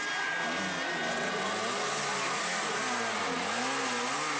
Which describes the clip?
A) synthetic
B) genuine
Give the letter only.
B